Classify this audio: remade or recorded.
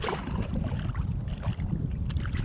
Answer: recorded